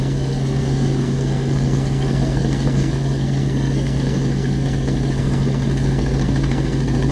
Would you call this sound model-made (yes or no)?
yes